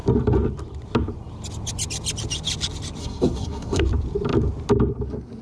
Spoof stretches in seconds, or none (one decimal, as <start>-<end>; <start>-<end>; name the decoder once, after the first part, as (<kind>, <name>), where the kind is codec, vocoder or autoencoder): 3.0-3.8 (codec, SNAC)